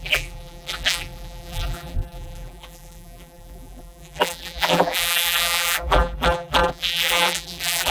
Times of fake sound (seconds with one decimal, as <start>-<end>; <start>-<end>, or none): 0.0-7.9

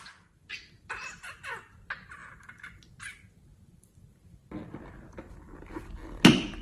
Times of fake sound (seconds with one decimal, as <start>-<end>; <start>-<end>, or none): 0.0-4.4; 5.4-6.6

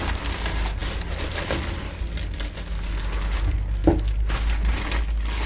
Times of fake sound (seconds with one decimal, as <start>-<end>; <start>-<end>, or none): none

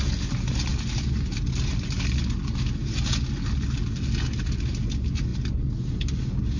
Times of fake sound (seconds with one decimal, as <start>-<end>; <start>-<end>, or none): none

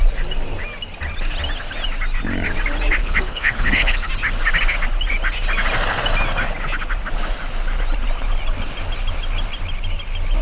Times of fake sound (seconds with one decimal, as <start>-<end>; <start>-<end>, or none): 3.0-4.1

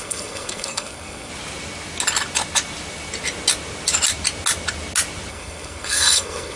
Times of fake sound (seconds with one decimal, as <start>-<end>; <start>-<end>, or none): 0.0-1.3; 5.3-6.6